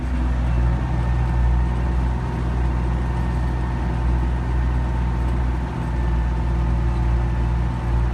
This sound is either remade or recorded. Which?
recorded